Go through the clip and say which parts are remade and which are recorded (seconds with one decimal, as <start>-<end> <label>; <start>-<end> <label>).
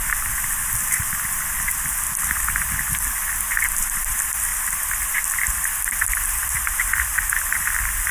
0.0-8.1 recorded